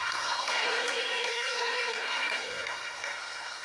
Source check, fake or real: fake